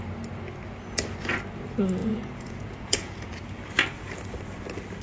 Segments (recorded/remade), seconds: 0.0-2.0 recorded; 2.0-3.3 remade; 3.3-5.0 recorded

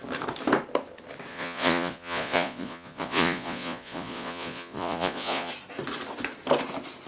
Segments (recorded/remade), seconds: 0.0-1.3 recorded; 1.3-5.5 remade; 5.5-7.1 recorded

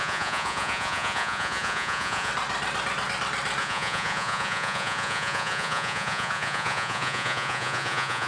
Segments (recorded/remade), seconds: 0.0-2.3 remade; 2.3-3.6 recorded; 3.6-8.3 remade

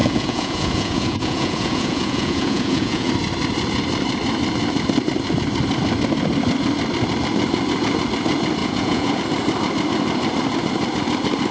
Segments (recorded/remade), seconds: 0.0-3.1 remade; 3.1-8.6 recorded; 8.6-9.2 remade; 9.2-11.5 recorded

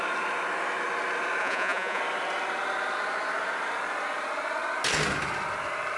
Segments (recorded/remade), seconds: 0.0-1.4 recorded; 1.4-2.0 remade; 2.0-6.0 recorded